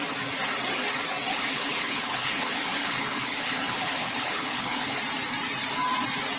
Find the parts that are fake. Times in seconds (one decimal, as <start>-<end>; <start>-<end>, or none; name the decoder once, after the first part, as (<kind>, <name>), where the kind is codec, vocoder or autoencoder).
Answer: 1.3-5.0 (codec, HILCodec)